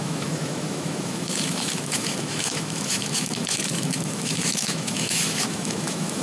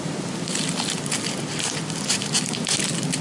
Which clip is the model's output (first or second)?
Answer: first